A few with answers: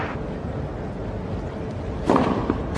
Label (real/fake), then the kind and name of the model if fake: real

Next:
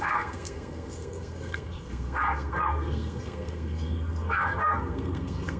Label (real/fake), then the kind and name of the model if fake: fake, codec, SNAC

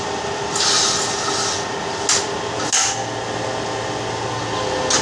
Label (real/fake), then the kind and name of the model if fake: real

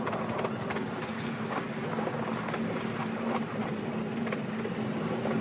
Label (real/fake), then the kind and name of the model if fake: real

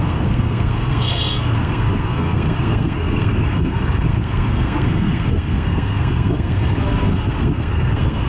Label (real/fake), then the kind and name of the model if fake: fake, codec, SNAC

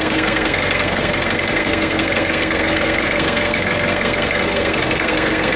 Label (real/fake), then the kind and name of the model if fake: fake, codec, SNAC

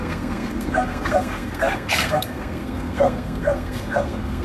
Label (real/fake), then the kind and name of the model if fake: fake, codec, SNAC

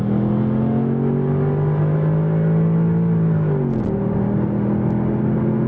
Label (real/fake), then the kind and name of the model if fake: real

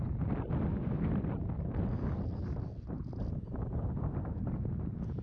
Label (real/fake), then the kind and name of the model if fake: real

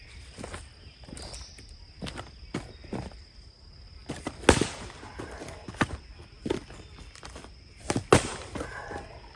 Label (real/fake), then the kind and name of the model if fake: real